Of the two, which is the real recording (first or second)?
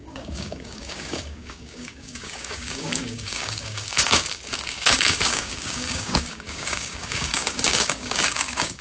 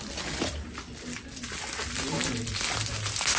second